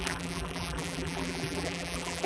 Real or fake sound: fake